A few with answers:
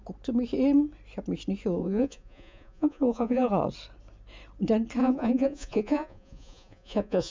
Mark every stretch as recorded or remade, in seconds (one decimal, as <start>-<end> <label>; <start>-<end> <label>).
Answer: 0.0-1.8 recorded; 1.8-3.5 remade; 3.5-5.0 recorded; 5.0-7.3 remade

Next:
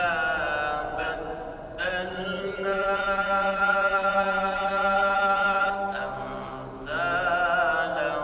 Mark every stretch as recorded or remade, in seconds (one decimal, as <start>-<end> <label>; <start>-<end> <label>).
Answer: 0.0-0.8 recorded; 0.8-5.7 remade; 5.7-8.2 recorded

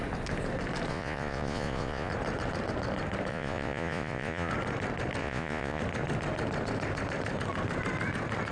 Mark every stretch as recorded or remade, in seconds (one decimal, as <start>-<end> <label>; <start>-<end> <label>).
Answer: 0.0-0.9 recorded; 0.9-2.1 remade; 2.1-3.3 recorded; 3.3-4.5 remade; 4.5-5.2 recorded; 5.2-5.8 remade; 5.8-8.5 recorded

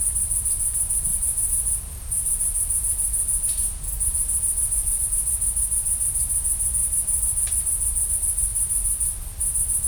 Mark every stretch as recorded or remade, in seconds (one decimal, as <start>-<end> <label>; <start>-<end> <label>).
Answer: 0.0-1.1 recorded; 1.1-5.0 remade; 5.0-9.9 recorded

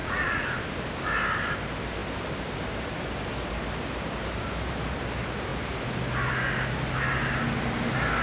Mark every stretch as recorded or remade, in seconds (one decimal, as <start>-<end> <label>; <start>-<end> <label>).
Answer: 0.0-0.6 remade; 0.6-8.2 recorded

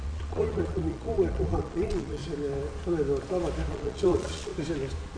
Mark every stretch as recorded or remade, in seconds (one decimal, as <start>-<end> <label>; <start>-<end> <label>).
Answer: 0.0-2.2 remade; 2.2-3.7 recorded; 3.7-4.5 remade; 4.5-5.2 recorded

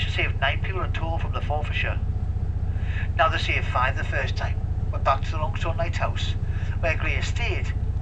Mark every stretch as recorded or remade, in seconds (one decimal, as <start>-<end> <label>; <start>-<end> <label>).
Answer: 0.0-4.2 recorded; 4.2-4.8 remade; 4.8-8.0 recorded